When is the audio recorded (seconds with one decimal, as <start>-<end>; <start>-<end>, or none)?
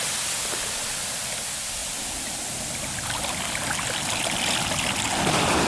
0.0-5.7